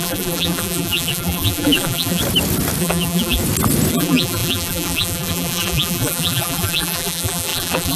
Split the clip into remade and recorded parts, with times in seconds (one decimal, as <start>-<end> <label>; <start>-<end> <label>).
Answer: 0.0-2.2 remade; 2.2-2.8 recorded; 2.8-3.4 remade; 3.4-3.9 recorded; 3.9-8.0 remade